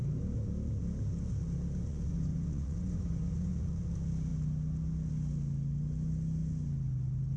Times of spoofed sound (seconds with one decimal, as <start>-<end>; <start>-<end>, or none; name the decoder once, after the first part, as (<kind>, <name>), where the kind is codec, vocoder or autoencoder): 1.9-3.8 (vocoder, Vocos)